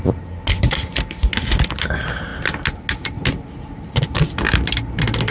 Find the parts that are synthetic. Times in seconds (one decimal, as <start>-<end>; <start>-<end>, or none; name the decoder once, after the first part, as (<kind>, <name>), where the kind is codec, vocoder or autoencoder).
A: none